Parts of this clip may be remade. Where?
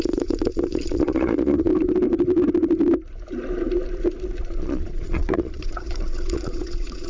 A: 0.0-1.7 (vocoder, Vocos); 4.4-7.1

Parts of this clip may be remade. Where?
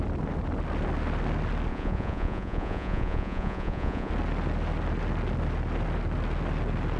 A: 1.7-4.1 (vocoder, Vocos)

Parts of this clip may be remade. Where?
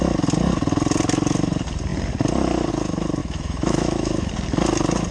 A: 3.2-4.3 (autoencoder, DAC-VAE)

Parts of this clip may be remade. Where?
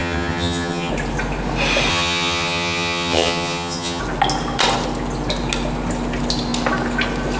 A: 0.0-0.9 (vocoder, HiFi-GAN); 1.9-4.0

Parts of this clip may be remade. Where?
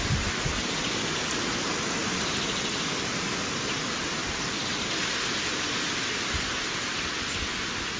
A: 2.0-2.7 (vocoder, BigVGAN v2)